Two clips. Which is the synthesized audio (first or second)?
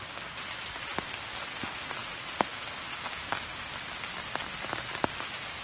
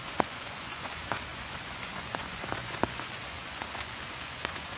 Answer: second